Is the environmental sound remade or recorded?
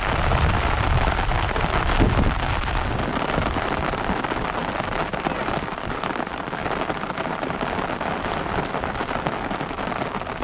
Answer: recorded